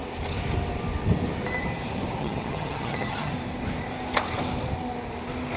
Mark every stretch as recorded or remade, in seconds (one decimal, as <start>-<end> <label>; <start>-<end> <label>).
0.0-2.2 recorded; 2.2-3.3 remade; 3.3-5.6 recorded